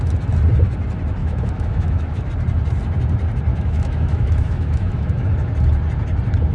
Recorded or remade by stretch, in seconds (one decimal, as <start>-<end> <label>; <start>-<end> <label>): 0.0-1.2 recorded; 1.2-2.3 remade; 2.3-3.5 recorded; 3.5-5.3 remade; 5.3-6.5 recorded